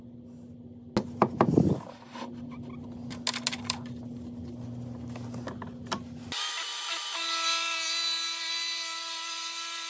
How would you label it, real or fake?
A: real